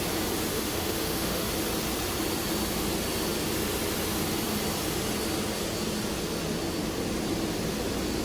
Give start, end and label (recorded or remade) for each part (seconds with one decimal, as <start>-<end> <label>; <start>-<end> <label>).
0.0-0.5 recorded; 0.5-1.5 remade; 1.5-8.2 recorded